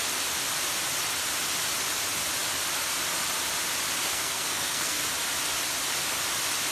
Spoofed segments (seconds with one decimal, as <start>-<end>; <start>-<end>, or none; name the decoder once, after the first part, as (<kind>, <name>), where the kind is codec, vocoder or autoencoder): 4.0-5.1 (codec, SNAC)